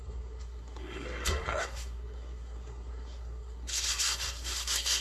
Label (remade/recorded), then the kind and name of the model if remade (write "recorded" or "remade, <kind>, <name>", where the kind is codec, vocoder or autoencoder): remade, codec, SNAC